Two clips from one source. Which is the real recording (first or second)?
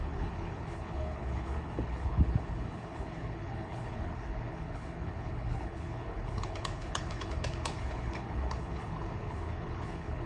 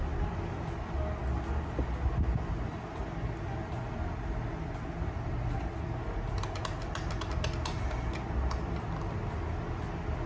second